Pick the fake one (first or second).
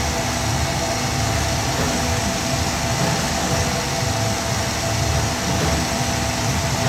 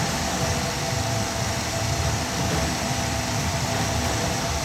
second